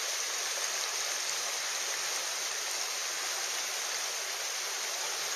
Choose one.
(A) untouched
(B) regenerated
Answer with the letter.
A